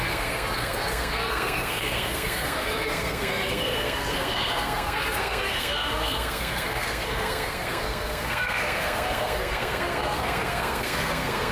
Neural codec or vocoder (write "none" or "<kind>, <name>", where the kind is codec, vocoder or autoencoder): codec, SNAC